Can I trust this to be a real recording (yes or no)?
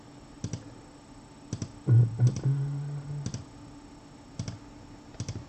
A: yes